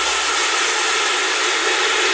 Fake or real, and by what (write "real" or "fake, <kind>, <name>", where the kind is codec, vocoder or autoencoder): real